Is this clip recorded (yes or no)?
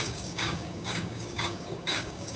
no